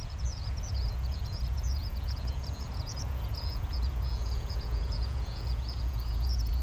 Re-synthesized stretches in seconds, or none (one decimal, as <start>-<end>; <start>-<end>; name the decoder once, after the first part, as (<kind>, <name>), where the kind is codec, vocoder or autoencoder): 0.0-6.6 (vocoder, Vocos)